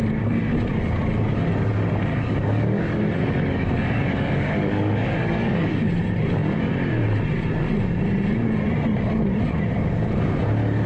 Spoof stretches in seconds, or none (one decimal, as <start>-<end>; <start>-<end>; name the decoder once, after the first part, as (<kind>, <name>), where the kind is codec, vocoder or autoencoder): 2.1-5.9 (codec, DAC)